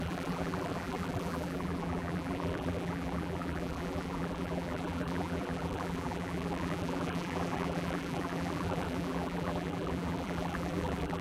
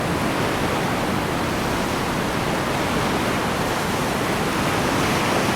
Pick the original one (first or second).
second